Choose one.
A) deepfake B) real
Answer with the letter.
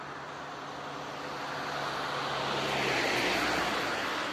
B